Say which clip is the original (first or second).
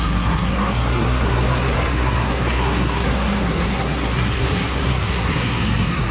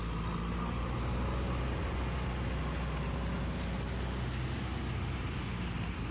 second